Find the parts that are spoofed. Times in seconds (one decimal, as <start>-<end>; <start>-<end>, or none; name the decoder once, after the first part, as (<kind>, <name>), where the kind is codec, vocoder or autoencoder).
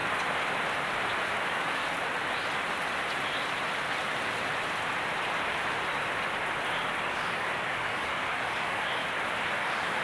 1.3-1.8 (codec, DAC); 7.0-9.0; 9.6-10.0